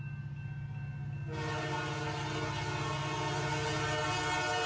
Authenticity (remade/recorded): recorded